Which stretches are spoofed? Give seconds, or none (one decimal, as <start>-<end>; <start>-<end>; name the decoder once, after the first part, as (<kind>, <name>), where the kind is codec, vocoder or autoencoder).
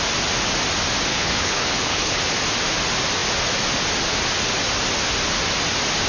1.1-2.2 (codec, HILCodec)